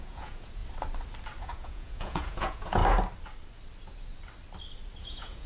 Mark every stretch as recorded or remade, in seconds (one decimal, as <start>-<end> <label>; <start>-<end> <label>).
0.0-0.6 remade; 0.6-1.4 recorded; 1.4-2.8 remade; 2.8-5.0 recorded; 5.0-5.5 remade